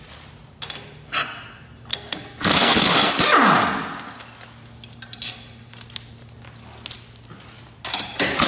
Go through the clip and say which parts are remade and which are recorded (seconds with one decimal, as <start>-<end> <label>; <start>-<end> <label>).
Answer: 0.0-1.9 recorded; 1.9-3.1 remade; 3.1-8.5 recorded